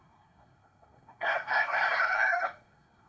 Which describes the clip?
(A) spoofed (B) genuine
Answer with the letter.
A